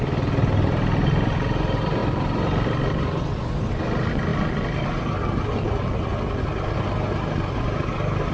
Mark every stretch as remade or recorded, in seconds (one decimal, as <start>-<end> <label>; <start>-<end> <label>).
0.0-8.3 recorded